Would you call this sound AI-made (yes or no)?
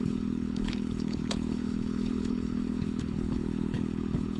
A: yes